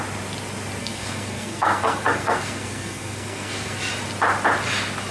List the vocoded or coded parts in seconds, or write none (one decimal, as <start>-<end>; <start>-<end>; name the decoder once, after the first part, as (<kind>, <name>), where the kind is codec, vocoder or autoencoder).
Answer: 0.8-3.9 (codec, SNAC)